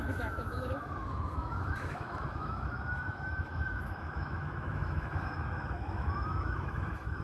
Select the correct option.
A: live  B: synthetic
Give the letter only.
B